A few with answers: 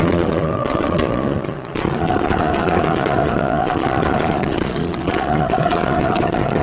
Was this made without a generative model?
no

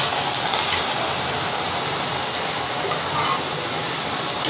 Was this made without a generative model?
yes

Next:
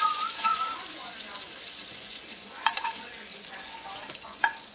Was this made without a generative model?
no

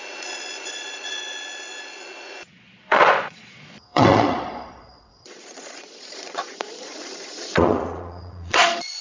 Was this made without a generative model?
no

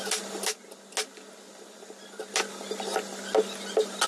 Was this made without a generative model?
yes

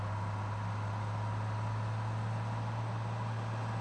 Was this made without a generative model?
yes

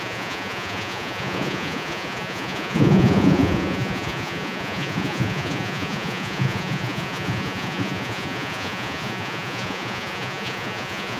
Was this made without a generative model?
no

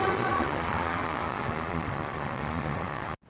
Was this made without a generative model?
no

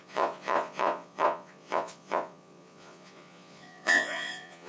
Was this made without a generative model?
no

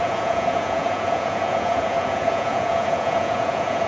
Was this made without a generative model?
no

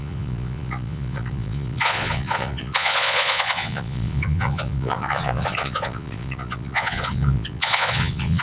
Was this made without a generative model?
no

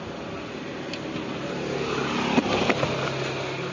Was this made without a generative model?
yes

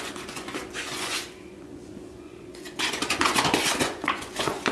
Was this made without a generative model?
no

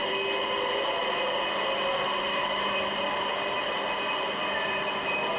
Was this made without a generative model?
yes